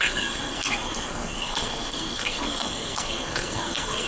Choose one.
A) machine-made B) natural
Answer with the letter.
A